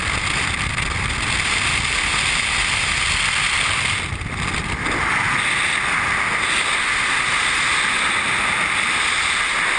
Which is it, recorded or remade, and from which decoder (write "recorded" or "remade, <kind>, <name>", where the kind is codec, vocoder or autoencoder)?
recorded